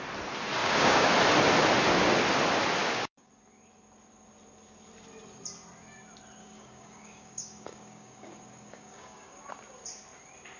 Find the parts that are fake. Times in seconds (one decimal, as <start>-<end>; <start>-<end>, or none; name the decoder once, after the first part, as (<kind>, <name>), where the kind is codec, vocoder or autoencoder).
0.6-1.1 (codec, DAC); 2.8-3.3; 6.4-9.4